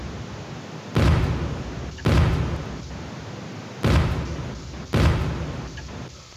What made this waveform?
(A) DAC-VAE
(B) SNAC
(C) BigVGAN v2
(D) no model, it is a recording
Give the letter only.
D